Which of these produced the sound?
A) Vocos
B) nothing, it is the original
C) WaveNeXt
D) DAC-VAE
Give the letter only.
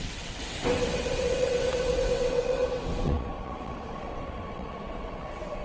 C